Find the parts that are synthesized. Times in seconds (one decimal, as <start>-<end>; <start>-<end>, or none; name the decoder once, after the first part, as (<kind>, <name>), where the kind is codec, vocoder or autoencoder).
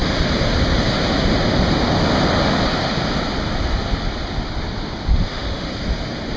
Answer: 5.1-5.7 (autoencoder, DAC-VAE)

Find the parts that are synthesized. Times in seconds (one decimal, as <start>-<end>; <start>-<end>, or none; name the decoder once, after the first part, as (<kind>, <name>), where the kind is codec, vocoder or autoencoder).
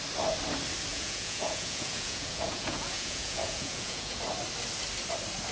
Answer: 0.9-4.2 (vocoder, Vocos)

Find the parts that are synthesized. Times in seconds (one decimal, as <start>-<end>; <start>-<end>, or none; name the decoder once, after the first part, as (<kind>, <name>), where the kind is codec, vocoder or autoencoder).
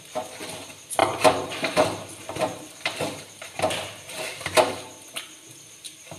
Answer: 1.0-4.7 (vocoder, BigVGAN v2)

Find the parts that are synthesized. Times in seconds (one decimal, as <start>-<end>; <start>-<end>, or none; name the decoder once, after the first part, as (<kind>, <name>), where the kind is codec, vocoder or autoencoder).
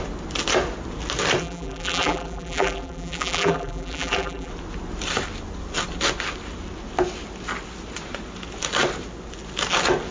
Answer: 1.4-4.5 (vocoder, BigVGAN v2)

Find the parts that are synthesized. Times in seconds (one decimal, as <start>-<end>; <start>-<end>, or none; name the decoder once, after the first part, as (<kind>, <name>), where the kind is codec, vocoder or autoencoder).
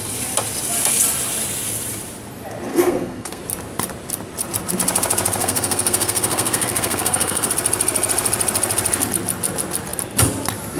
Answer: 2.7-3.4 (codec, SNAC); 5.4-7.5